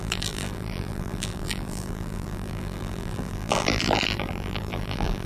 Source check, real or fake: fake